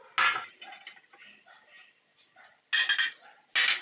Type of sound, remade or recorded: recorded